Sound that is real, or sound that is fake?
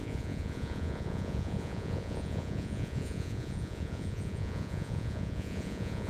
fake